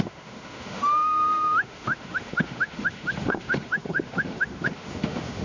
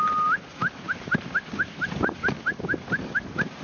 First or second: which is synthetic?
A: first